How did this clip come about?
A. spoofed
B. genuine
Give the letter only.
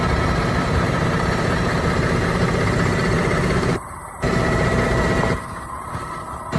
A